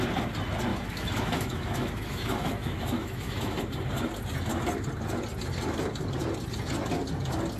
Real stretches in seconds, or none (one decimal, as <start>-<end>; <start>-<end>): 0.0-0.7; 3.6-7.6